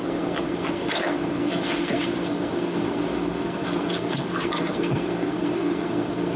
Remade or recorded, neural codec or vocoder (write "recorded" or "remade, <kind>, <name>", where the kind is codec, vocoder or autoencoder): remade, codec, SNAC